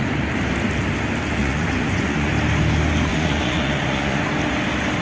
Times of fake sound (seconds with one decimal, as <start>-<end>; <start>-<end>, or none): 1.4-2.3; 3.1-4.2